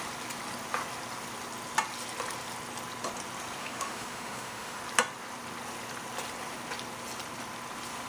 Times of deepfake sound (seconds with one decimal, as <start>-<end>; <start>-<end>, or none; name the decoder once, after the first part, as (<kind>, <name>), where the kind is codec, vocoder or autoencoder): 3.6-4.8 (autoencoder, DAC-VAE)